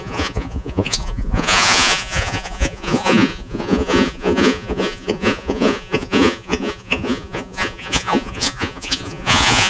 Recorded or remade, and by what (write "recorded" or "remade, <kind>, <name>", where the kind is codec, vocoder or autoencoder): remade, vocoder, Vocos